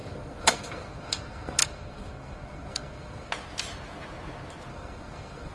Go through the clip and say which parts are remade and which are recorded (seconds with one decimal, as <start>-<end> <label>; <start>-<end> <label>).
0.0-3.3 remade; 3.3-4.7 recorded; 4.7-5.5 remade